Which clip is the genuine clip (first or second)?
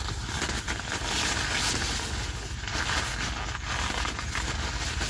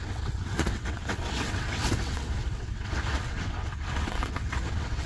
first